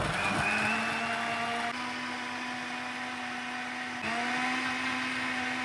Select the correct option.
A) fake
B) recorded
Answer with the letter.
B